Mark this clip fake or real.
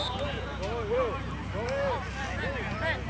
real